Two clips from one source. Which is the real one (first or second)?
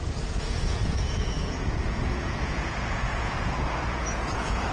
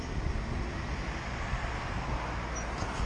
second